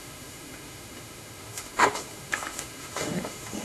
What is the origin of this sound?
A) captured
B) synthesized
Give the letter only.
B